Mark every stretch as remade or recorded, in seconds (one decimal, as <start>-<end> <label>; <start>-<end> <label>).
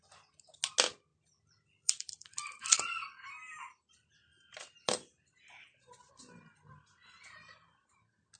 0.0-1.1 recorded; 1.1-6.1 remade; 6.1-7.0 recorded; 7.0-7.6 remade; 7.6-8.4 recorded